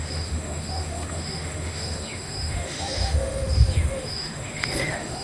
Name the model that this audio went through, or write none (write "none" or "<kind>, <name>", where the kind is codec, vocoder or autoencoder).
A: autoencoder, DAC-VAE